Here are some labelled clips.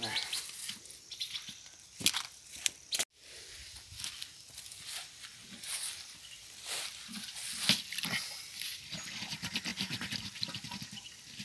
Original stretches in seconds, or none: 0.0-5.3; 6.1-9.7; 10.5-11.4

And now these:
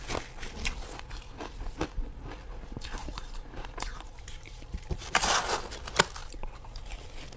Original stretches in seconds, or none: 0.0-3.0; 5.1-6.2; 6.8-7.4

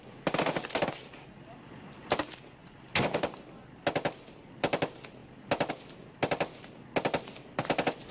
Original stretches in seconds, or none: 0.0-8.1

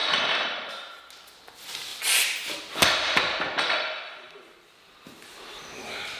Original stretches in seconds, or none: 1.0-1.9; 5.6-6.2

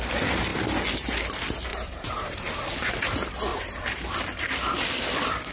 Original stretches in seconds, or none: 0.0-1.7; 3.0-3.5; 4.1-5.5

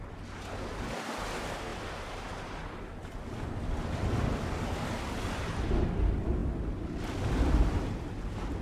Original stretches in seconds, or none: 0.0-8.6

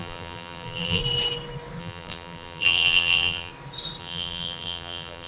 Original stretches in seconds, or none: 1.0-1.8; 3.5-4.0

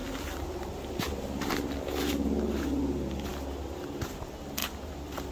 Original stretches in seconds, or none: 2.0-4.6